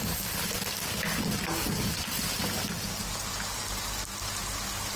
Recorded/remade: recorded